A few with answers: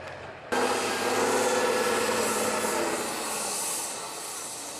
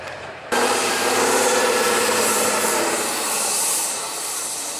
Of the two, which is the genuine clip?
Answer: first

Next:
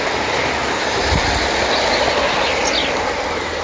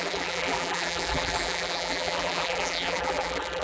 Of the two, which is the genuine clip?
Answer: first